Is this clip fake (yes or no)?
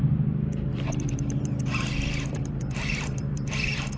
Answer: yes